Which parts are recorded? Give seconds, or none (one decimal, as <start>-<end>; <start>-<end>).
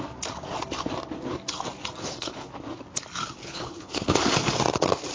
0.0-2.0; 2.5-3.4; 4.2-5.1